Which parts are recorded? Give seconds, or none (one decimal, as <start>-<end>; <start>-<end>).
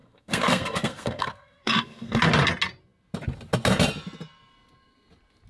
2.2-5.5